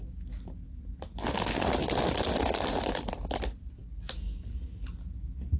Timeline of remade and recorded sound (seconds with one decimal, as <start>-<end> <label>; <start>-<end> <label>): 0.0-5.6 recorded

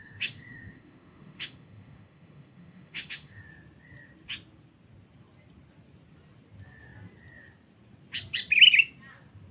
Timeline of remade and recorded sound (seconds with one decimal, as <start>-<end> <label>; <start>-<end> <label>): 0.0-3.4 remade; 3.4-9.5 recorded

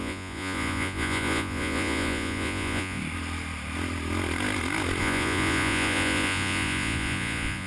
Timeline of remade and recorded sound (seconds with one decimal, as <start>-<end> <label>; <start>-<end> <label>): 0.0-3.0 remade; 3.0-5.0 recorded; 5.0-7.7 remade

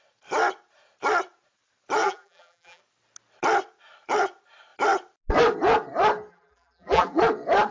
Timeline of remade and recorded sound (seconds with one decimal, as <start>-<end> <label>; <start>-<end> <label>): 0.0-2.0 recorded; 2.0-2.8 remade; 2.8-6.3 recorded; 6.3-7.2 remade; 7.2-7.7 recorded

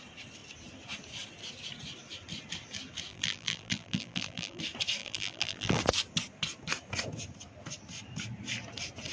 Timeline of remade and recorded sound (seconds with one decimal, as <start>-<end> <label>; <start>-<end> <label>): 0.0-3.1 recorded; 3.1-4.6 remade; 4.6-5.0 recorded; 5.0-5.8 remade; 5.8-9.1 recorded

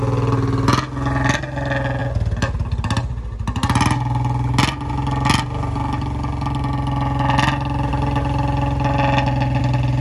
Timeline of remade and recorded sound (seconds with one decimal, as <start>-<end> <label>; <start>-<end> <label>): 0.0-10.0 recorded

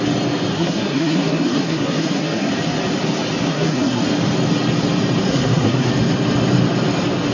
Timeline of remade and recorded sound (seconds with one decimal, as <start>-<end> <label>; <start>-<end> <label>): 0.0-0.5 recorded; 0.5-2.5 remade; 2.5-3.5 recorded; 3.5-4.0 remade; 4.0-5.3 recorded; 5.3-5.9 remade; 5.9-7.3 recorded

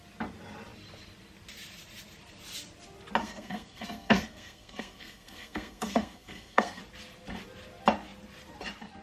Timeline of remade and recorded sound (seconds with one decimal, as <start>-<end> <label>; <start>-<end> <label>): 0.0-3.2 recorded; 3.2-6.8 remade; 6.8-9.0 recorded